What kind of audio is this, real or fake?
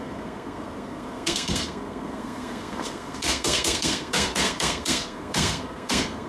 fake